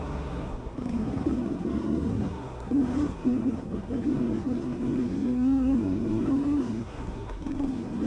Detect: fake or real fake